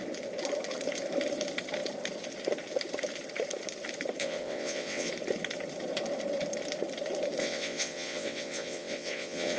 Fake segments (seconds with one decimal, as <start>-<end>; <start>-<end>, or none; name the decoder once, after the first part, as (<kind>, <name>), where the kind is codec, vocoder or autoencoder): 4.2-5.1 (vocoder, WaveNeXt); 7.4-9.6